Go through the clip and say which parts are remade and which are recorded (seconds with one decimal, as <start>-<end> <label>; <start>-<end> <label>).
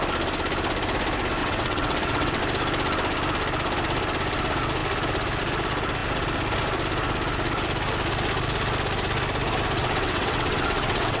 0.0-1.4 recorded; 1.4-2.4 remade; 2.4-9.8 recorded; 9.8-11.2 remade